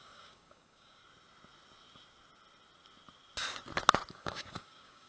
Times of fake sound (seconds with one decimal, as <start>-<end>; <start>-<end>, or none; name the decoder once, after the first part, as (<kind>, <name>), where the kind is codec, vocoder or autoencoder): 0.0-1.0 (codec, DAC); 4.1-5.1